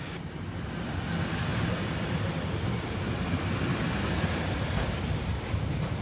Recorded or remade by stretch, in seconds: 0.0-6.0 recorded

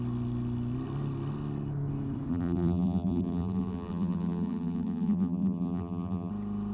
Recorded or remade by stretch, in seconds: 0.0-2.3 recorded; 2.3-6.3 remade; 6.3-6.7 recorded

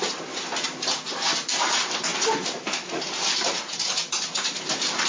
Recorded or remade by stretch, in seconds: 0.0-5.1 recorded

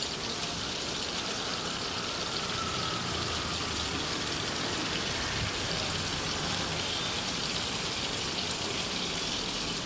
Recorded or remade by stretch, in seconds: 0.0-9.9 remade

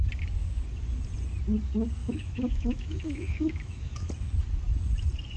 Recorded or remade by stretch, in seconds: 0.0-2.0 recorded; 2.0-4.1 remade; 4.1-5.4 recorded

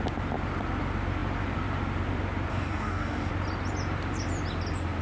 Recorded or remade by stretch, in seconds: 0.0-2.5 recorded; 2.5-3.3 remade; 3.3-5.0 recorded